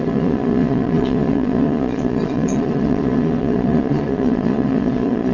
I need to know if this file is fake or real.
fake